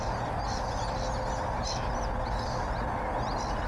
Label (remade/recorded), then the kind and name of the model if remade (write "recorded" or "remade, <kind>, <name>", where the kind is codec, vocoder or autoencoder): recorded